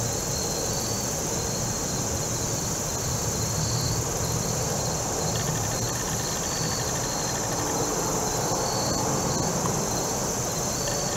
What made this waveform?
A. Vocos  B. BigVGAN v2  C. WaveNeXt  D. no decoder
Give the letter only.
D